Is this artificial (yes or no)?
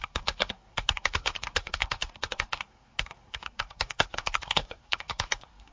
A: yes